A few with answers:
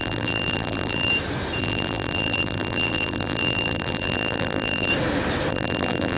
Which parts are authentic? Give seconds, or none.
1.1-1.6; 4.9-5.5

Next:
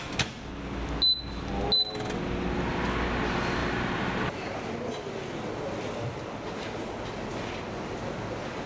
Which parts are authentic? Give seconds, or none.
0.0-3.6; 4.6-8.7

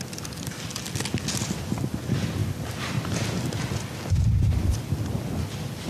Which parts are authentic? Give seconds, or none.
0.0-2.4; 4.5-5.9

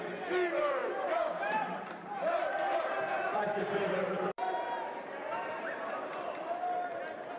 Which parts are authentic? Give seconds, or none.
0.0-0.8; 4.5-5.3; 6.1-7.4